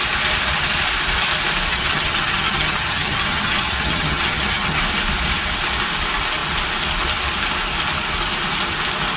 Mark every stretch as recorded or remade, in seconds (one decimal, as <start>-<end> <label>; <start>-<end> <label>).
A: 0.0-1.7 recorded; 1.7-4.8 remade; 4.8-9.2 recorded